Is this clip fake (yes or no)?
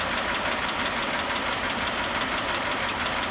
yes